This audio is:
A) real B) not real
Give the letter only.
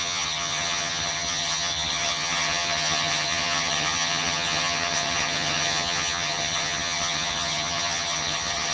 B